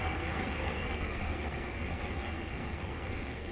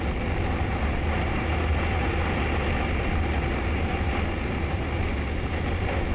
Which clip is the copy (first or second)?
first